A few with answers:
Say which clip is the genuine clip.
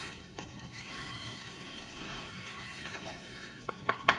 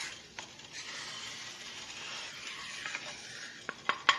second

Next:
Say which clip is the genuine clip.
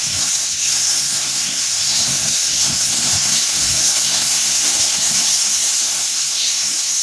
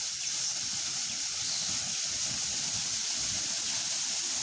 second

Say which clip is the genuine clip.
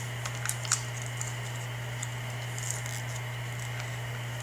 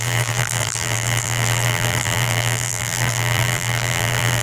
first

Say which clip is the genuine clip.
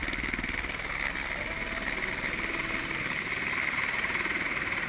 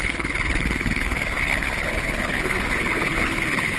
first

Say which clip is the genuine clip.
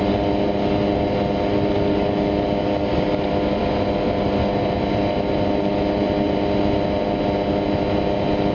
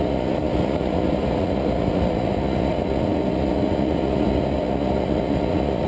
first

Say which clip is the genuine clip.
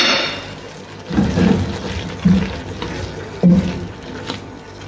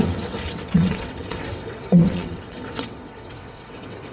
first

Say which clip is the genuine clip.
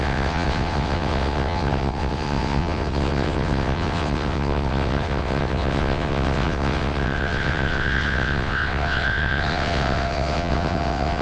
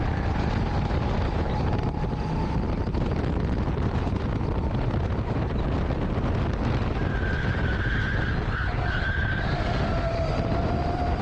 second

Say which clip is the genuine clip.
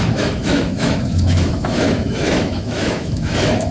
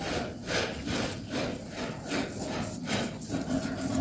second